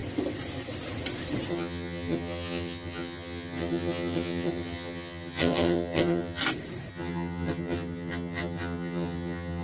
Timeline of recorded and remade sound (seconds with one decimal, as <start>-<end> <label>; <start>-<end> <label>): 0.0-1.5 recorded; 1.5-6.4 remade; 6.4-6.9 recorded; 6.9-9.6 remade